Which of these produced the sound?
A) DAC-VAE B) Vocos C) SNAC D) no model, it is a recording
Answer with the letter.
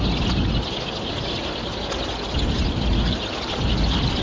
D